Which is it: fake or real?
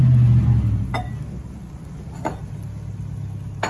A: real